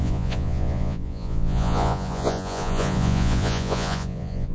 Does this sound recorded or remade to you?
remade